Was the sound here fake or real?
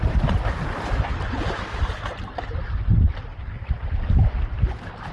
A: real